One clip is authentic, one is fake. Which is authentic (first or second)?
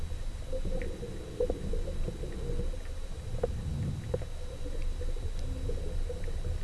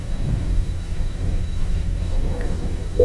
first